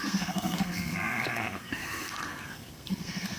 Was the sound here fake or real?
fake